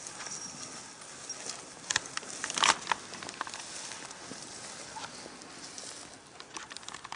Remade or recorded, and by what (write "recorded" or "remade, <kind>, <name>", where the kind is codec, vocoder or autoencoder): recorded